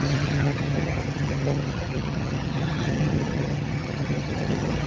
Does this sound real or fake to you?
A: fake